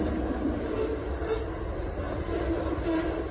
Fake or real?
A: real